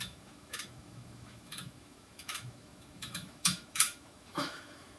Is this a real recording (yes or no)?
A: no